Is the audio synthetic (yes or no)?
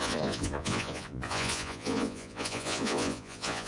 yes